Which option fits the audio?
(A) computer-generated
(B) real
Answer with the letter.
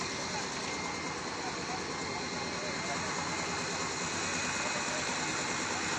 B